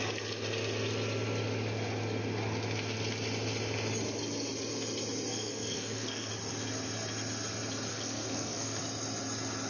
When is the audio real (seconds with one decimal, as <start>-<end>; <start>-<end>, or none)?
0.0-5.3; 6.3-7.9; 8.8-9.7